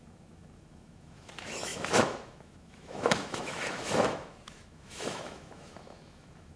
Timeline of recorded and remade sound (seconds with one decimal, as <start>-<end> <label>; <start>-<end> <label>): 0.0-6.6 remade